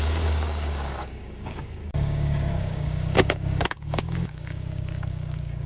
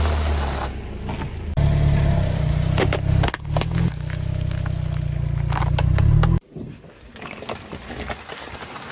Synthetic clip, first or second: first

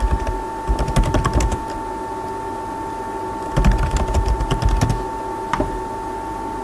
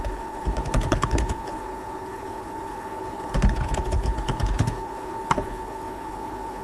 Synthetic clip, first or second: second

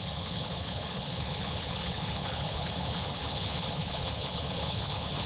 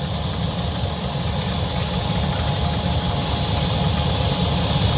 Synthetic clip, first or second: first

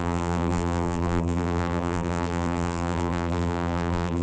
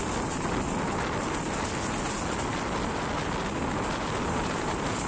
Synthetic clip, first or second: first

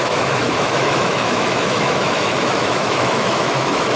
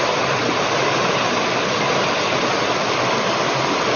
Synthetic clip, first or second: first